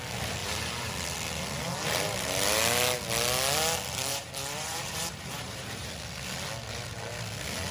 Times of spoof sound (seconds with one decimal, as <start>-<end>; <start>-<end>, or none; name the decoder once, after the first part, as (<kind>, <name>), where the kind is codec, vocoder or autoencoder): 0.4-0.9 (vocoder, BigVGAN v2); 4.1-5.9